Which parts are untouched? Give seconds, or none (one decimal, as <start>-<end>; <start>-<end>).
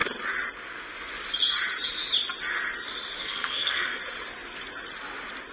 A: 0.0-3.2; 4.0-5.5